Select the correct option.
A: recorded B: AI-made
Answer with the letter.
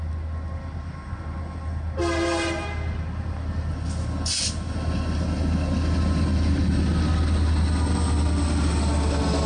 A